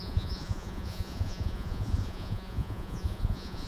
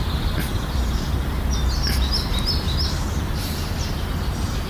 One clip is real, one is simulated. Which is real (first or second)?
second